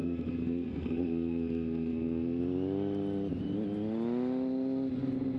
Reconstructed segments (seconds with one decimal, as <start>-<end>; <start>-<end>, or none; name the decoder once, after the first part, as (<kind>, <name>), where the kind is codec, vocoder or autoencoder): 0.0-2.4 (codec, SNAC)